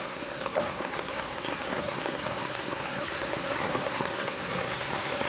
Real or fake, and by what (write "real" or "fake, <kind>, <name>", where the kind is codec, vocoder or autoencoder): fake, codec, SNAC